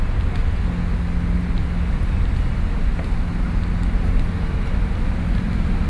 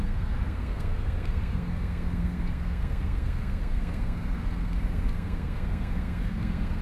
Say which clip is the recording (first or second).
first